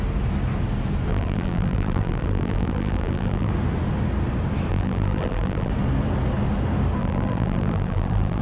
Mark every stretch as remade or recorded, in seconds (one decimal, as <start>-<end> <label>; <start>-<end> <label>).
0.0-1.1 recorded; 1.1-3.5 remade; 3.5-4.7 recorded; 4.7-5.7 remade; 5.7-7.0 recorded; 7.0-8.4 remade